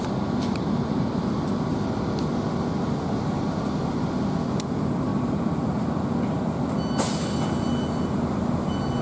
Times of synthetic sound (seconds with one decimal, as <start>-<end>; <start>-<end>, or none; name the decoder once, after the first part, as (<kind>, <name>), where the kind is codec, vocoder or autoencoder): 5.1-5.8 (vocoder, BigVGAN v2)